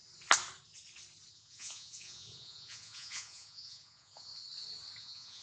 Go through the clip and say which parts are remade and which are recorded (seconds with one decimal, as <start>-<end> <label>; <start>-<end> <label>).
0.0-1.3 recorded; 1.3-4.3 remade; 4.3-5.0 recorded; 5.0-5.4 remade